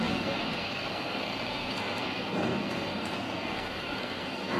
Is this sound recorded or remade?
remade